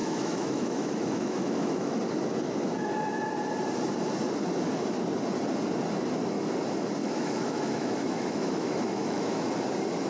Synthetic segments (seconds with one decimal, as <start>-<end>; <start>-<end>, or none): 0.0-2.0; 7.0-9.5